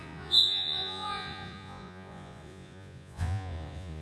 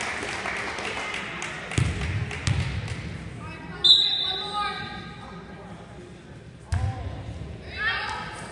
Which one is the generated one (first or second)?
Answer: first